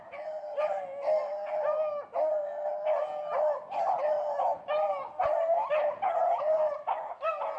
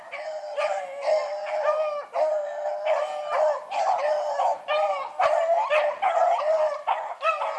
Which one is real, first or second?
first